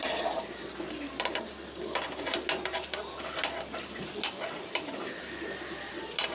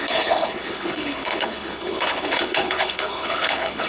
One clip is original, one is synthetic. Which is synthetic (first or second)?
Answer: second